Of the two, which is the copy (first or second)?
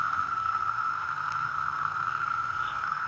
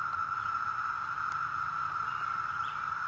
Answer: first